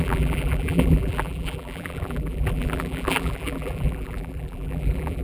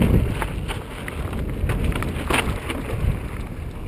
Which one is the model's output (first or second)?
first